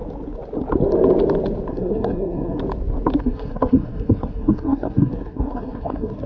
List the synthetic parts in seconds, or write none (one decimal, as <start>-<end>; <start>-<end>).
1.7-2.6; 3.2-6.3